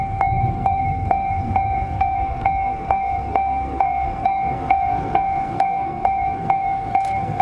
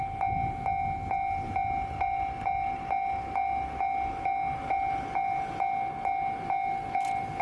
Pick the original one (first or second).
second